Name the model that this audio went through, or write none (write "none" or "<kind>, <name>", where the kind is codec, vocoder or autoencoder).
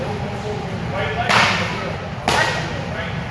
none